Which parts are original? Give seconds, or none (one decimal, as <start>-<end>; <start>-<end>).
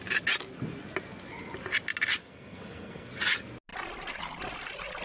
0.0-2.2; 3.1-5.0